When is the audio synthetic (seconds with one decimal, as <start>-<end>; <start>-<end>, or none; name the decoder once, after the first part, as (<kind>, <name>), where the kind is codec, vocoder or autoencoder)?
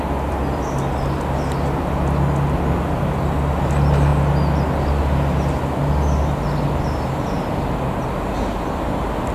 none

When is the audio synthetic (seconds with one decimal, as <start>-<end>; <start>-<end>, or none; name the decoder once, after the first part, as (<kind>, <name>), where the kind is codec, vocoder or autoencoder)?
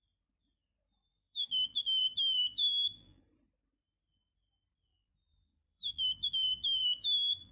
1.1-3.2 (vocoder, BigVGAN v2); 4.9-7.5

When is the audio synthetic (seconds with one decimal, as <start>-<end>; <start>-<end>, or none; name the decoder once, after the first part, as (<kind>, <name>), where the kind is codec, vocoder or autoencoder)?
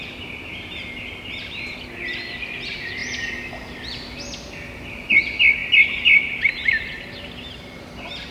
0.0-3.0 (vocoder, BigVGAN v2); 5.1-8.3